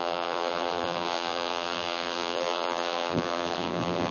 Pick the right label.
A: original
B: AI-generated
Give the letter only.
B